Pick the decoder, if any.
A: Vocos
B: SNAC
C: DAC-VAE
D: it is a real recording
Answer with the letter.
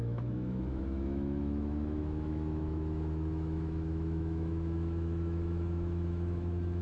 C